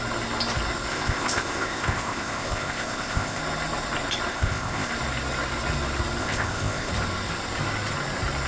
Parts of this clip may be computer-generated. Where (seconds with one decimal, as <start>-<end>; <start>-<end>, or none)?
0.9-3.4; 4.3-4.9; 6.2-6.9

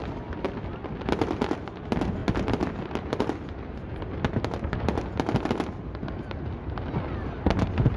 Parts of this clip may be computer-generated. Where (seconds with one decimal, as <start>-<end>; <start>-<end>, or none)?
none

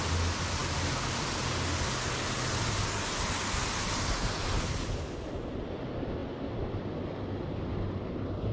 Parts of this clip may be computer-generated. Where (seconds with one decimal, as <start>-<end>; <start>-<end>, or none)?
none

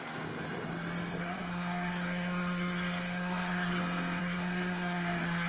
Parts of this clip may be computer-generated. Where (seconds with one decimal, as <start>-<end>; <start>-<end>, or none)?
1.2-3.8; 4.2-5.5

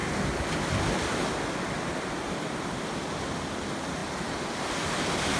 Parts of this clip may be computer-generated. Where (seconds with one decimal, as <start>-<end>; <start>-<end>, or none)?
none

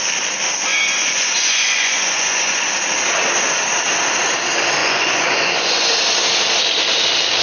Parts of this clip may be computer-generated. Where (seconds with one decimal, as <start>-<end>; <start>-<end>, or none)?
0.7-2.6; 4.8-5.9